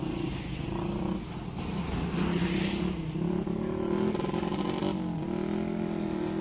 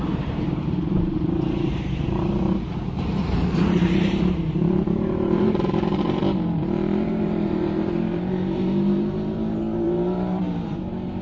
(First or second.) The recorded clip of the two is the first